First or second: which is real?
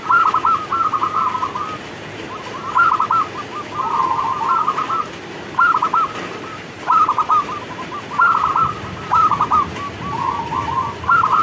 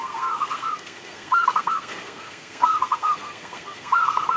first